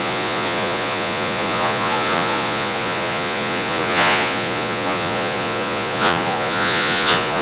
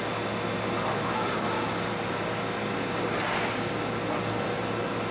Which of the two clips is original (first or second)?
second